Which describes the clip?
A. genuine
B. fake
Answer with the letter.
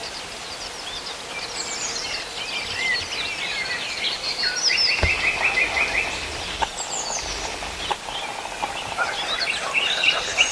A